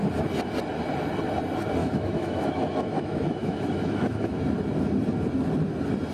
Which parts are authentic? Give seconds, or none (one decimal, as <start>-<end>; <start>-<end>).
0.0-1.8; 4.4-6.1